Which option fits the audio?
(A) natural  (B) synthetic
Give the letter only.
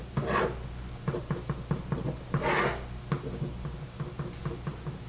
A